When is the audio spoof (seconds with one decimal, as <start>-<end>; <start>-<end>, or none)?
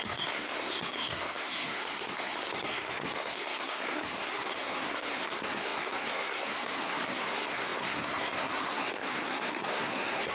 0.0-10.3